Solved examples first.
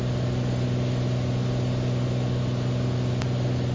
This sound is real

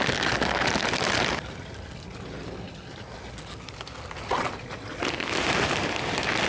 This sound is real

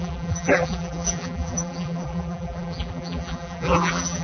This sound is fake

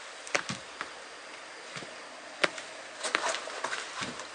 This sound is real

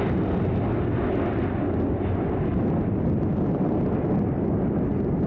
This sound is real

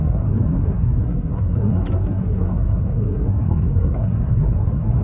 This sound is fake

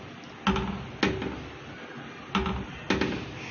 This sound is real